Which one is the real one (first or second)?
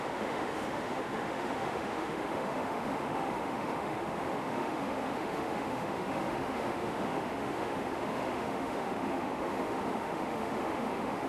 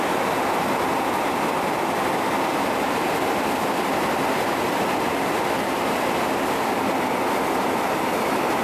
second